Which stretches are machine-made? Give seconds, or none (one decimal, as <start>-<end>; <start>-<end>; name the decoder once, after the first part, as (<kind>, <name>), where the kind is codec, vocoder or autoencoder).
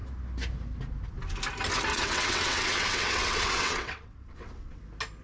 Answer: 1.9-4.8 (vocoder, WaveNeXt)